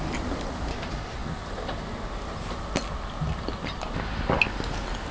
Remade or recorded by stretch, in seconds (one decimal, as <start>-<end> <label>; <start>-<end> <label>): 0.0-5.1 recorded